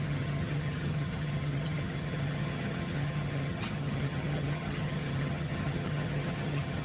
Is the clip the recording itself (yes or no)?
no